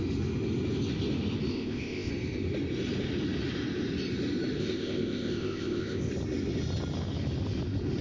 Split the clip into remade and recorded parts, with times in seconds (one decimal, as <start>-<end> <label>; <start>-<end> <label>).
0.0-1.5 recorded; 1.5-2.1 remade; 2.1-4.6 recorded; 4.6-6.1 remade; 6.1-8.0 recorded